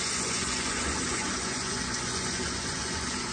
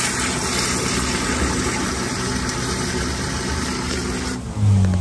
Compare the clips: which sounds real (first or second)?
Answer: second